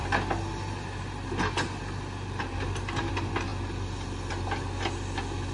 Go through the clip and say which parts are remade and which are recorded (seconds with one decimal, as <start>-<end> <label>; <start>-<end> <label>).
0.0-5.5 recorded